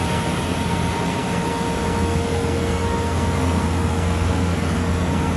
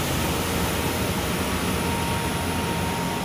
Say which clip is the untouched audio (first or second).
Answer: second